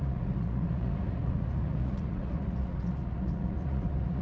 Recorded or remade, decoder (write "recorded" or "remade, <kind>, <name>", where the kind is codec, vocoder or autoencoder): remade, vocoder, Vocos